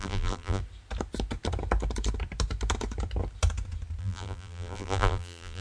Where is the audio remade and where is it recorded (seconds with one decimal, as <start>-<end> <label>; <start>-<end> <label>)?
0.0-0.6 remade; 0.6-4.0 recorded; 4.0-5.6 remade